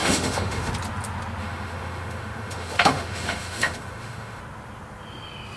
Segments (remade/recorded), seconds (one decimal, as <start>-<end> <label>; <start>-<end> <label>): 0.0-0.7 remade; 0.7-1.4 recorded; 1.4-4.4 remade; 4.4-5.6 recorded